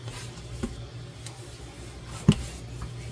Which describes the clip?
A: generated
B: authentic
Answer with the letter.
B